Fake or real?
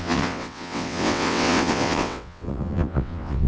fake